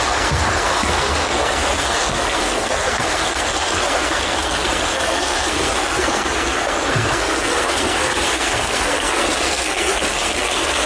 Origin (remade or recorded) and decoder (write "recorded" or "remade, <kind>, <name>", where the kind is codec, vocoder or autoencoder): remade, codec, SNAC